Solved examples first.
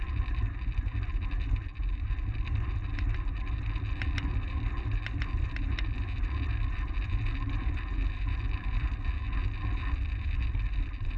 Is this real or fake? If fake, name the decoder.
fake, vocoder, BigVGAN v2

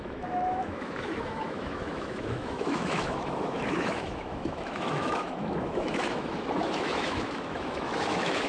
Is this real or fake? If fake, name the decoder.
fake, autoencoder, DAC-VAE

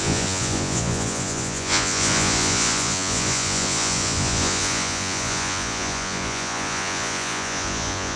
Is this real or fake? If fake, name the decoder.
fake, vocoder, Vocos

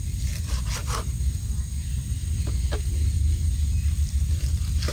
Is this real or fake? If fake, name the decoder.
real